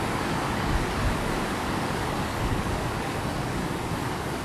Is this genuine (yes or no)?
no